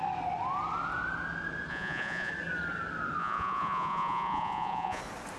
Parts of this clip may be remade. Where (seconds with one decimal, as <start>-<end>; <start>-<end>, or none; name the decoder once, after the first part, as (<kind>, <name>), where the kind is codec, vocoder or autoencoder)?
1.7-2.3 (vocoder, Vocos); 3.2-5.0